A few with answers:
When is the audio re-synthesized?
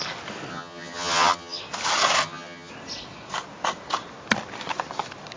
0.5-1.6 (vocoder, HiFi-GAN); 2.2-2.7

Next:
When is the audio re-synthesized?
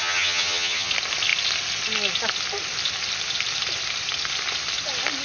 0.0-0.9 (vocoder, HiFi-GAN)